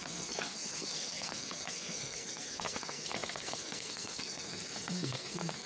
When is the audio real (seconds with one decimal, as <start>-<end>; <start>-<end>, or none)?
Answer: none